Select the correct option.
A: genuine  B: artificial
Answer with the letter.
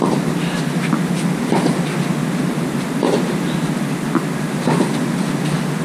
A